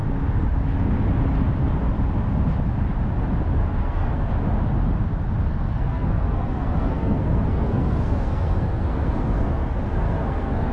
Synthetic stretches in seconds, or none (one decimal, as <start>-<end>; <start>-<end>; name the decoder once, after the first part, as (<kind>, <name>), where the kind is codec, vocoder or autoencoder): 3.6-4.3 (codec, SNAC); 5.5-10.7